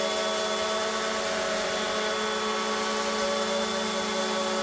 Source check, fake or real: real